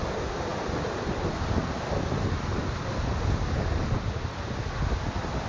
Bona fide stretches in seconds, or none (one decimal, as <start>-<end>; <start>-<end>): 0.0-5.5